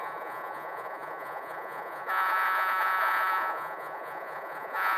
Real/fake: fake